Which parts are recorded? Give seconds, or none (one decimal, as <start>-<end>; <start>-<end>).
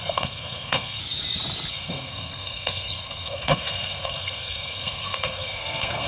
1.0-1.7